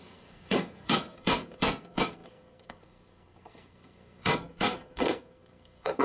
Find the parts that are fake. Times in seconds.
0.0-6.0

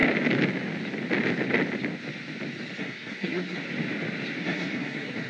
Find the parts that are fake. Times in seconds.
2.8-3.6; 4.4-5.3

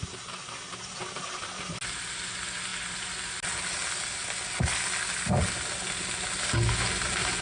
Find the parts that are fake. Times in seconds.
none